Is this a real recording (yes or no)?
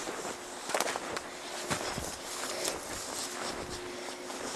yes